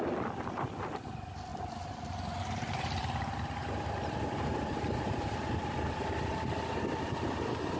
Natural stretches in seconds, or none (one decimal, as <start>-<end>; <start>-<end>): 0.0-7.8